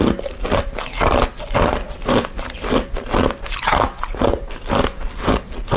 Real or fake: real